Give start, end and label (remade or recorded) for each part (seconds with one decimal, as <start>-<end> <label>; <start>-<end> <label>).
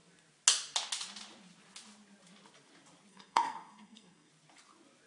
0.0-3.1 recorded; 3.1-4.3 remade; 4.3-5.1 recorded